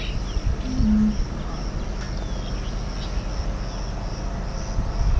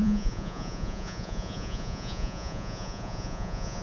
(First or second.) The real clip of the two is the first